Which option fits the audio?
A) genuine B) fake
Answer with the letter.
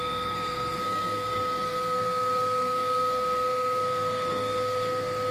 B